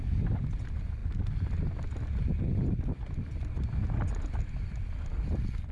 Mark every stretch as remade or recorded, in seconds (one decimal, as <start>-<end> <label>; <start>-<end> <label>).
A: 0.0-5.7 recorded